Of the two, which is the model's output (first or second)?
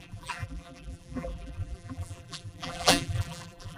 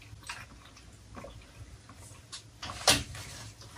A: first